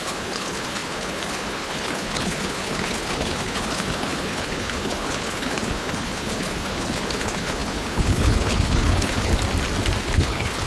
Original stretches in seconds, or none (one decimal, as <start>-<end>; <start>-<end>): 9.3-10.0